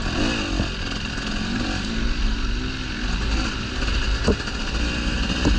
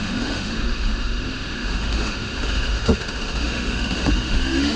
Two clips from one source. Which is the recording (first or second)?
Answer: first